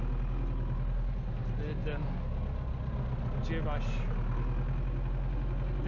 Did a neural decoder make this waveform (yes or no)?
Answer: no